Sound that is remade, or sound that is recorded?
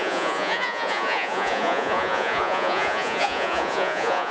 remade